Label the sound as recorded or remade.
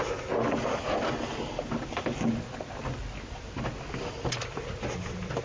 recorded